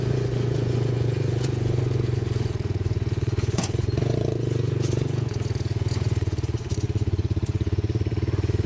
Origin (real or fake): fake